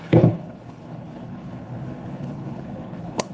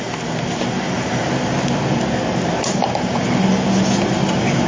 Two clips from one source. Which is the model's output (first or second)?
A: first